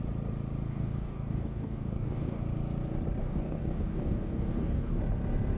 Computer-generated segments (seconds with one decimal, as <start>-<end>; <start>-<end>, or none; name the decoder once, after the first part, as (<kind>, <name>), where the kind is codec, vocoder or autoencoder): 0.7-2.4 (codec, DAC); 3.2-5.0